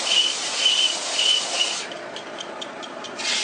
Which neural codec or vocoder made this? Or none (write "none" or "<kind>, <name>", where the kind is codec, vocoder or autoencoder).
vocoder, BigVGAN v2